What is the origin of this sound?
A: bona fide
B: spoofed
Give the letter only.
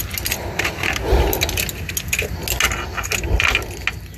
A